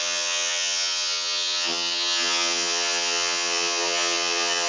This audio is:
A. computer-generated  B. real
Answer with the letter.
A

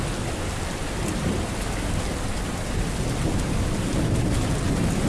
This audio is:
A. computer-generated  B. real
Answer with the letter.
B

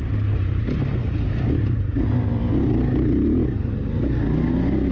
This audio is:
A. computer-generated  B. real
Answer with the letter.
B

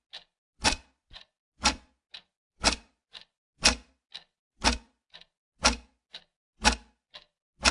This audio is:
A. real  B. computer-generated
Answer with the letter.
A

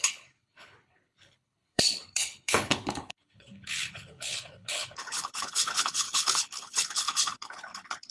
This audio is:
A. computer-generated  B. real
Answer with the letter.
A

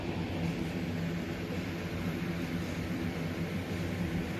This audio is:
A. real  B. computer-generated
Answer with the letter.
B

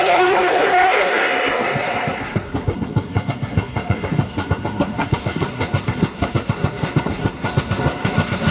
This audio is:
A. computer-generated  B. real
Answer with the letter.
A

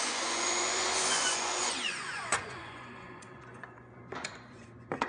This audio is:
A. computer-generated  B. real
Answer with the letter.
A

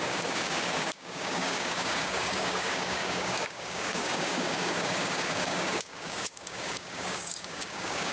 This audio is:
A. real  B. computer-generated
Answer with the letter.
B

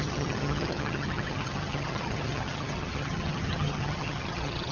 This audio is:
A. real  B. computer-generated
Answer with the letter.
B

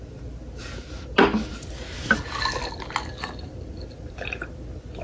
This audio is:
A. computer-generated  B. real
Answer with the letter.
B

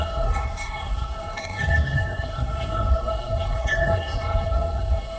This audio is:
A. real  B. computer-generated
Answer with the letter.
B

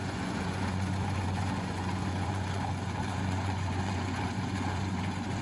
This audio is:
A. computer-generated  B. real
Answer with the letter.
A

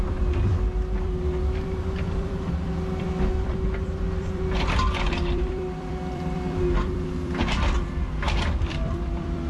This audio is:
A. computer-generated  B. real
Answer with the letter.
A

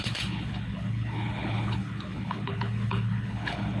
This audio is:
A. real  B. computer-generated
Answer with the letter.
B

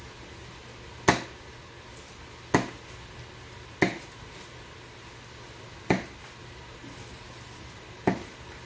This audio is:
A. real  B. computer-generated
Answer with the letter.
A